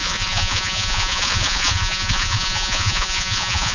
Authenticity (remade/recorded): remade